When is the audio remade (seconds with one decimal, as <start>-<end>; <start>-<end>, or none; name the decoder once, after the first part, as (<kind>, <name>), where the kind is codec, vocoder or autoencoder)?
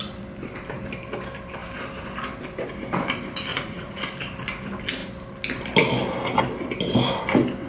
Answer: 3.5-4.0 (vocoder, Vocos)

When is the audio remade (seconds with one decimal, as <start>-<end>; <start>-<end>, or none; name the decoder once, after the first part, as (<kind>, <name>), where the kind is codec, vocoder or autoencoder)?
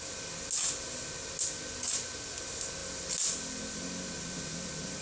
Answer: none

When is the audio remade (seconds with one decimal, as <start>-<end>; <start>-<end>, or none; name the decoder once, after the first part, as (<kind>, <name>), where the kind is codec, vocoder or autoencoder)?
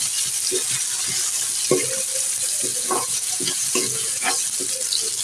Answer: 2.7-4.3 (vocoder, Vocos)